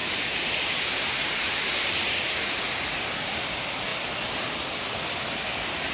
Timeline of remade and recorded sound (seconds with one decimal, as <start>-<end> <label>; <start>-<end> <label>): 0.0-3.5 remade; 3.5-5.9 recorded

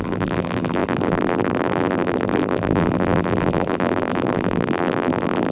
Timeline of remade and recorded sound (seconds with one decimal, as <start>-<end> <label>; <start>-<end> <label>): 0.0-5.5 remade

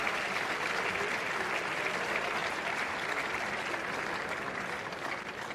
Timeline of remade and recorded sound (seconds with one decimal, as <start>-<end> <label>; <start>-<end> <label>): 0.0-5.5 recorded

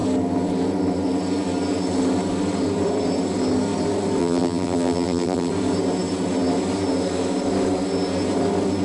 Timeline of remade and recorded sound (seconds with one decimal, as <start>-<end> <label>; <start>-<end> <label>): 0.0-4.2 recorded; 4.2-5.5 remade; 5.5-8.8 recorded